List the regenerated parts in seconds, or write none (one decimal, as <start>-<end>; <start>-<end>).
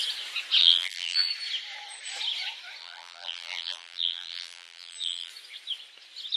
0.6-1.3; 2.8-5.3